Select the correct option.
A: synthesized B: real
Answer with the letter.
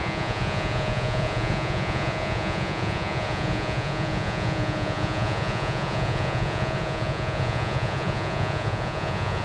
A